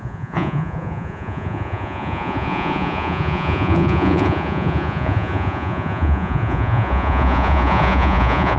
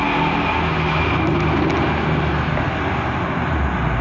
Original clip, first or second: second